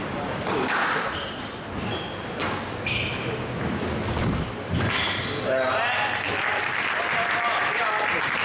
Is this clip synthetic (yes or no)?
no